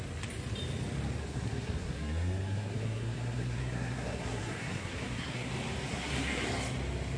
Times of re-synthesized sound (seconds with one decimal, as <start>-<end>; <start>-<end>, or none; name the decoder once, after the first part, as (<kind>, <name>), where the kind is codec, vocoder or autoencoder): 1.2-5.5 (codec, SNAC); 5.9-6.4